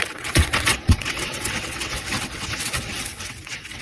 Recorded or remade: remade